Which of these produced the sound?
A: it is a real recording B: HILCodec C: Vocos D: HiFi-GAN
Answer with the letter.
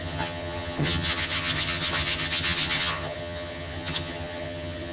D